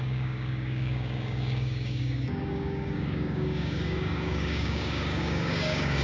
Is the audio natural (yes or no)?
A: no